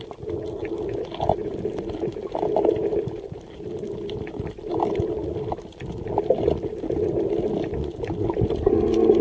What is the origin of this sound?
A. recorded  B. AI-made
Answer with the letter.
A